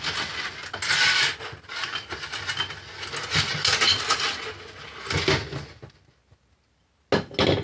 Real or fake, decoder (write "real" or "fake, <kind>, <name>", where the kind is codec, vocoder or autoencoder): real